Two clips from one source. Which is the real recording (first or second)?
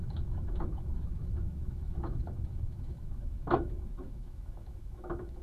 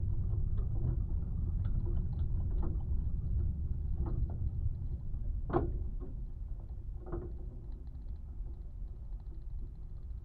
second